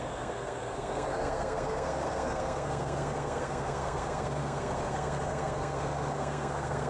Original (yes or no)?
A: no